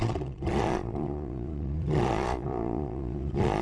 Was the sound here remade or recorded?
remade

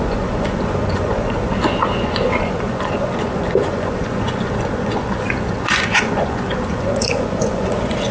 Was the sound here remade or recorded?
remade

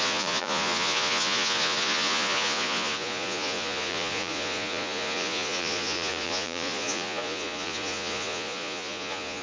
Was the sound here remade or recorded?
remade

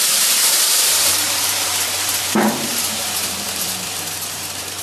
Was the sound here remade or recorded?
remade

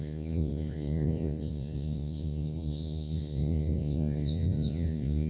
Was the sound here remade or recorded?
remade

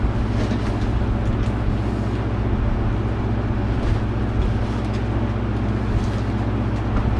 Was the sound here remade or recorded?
recorded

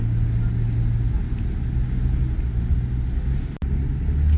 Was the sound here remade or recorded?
recorded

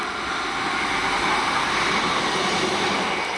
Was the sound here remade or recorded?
recorded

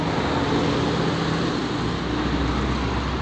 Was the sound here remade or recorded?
recorded